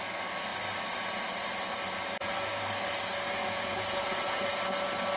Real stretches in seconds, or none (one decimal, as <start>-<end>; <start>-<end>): 0.0-3.4; 4.5-5.2